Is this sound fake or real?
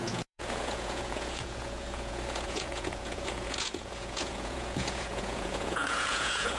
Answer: fake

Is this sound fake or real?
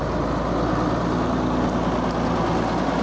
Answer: real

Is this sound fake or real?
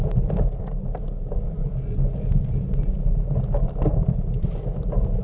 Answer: real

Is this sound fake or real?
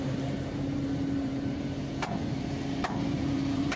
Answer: fake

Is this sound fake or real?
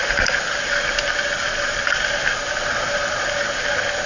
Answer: real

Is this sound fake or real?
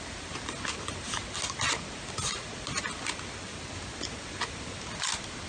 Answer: real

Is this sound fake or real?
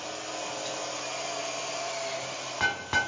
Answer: real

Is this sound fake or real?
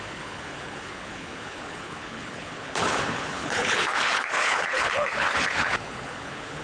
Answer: fake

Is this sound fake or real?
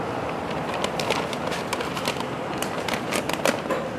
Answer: fake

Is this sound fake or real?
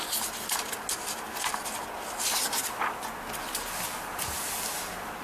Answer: real